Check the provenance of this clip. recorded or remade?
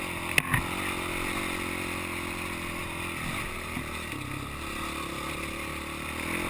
recorded